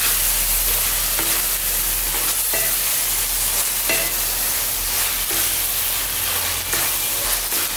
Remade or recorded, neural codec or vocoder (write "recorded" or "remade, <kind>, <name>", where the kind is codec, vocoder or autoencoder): recorded